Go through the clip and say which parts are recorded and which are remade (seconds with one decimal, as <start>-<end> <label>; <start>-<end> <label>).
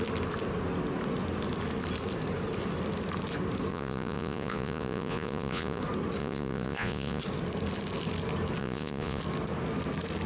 0.0-3.7 recorded; 3.7-5.8 remade; 5.8-6.2 recorded; 6.2-7.2 remade; 7.2-8.6 recorded; 8.6-9.2 remade; 9.2-10.3 recorded